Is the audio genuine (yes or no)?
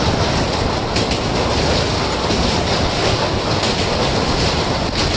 yes